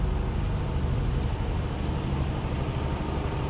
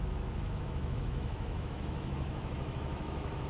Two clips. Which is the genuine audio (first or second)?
first